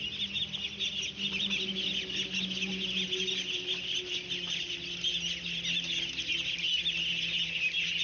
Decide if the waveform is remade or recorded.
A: recorded